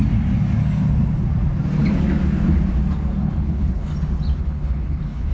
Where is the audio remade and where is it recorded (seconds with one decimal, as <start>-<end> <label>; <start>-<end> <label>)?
0.0-3.2 recorded; 3.2-3.9 remade; 3.9-4.4 recorded; 4.4-5.3 remade